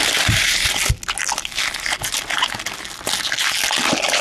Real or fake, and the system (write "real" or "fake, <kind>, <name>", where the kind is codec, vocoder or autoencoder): real